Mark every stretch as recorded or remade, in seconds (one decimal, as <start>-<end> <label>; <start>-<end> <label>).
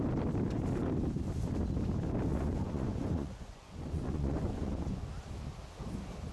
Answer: 0.0-2.3 recorded; 2.3-5.1 remade; 5.1-6.3 recorded